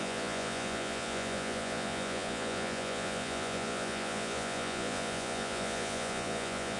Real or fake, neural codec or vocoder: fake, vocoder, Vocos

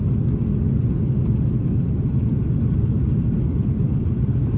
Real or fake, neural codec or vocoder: real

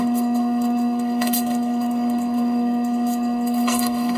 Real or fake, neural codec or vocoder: fake, codec, SNAC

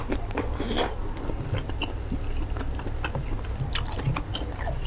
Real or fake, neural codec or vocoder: real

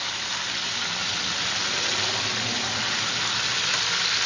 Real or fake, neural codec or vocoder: real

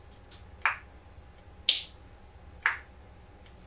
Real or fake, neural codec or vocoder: real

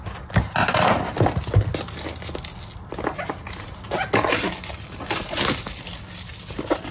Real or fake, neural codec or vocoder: real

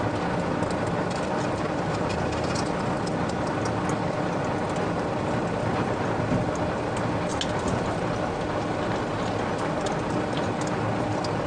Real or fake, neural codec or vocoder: real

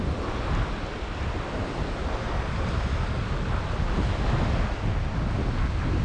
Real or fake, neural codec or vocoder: real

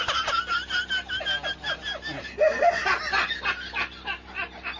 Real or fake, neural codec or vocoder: real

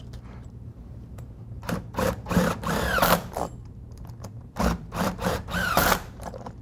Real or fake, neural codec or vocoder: fake, vocoder, BigVGAN v2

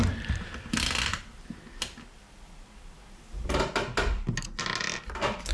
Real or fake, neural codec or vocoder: real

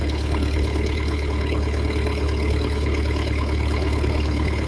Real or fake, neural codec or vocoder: fake, codec, HILCodec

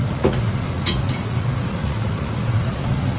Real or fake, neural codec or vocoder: fake, vocoder, Vocos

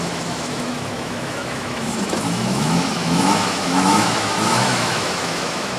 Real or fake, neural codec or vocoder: fake, autoencoder, DAC-VAE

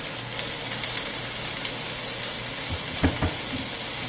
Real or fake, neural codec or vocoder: real